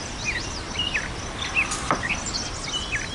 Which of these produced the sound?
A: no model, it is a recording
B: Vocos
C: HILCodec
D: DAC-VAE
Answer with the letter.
A